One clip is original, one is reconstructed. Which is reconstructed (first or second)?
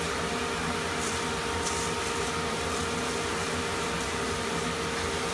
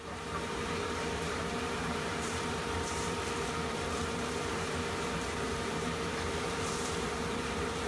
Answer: second